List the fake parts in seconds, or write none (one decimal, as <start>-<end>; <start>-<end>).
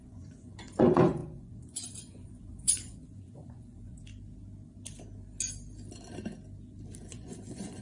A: 0.0-4.0; 7.1-7.8